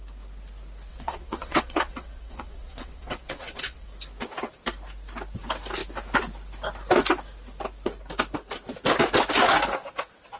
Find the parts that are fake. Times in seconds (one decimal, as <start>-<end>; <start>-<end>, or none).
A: 0.9-3.9